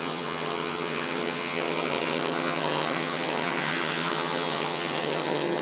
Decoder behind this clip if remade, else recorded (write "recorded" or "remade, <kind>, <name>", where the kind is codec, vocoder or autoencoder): remade, vocoder, HiFi-GAN